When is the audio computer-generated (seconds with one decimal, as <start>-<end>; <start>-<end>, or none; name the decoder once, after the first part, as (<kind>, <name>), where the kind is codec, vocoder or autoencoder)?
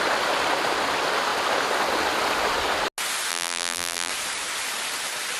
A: 3.3-4.1 (vocoder, BigVGAN v2)